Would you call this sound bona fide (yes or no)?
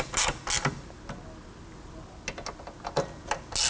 yes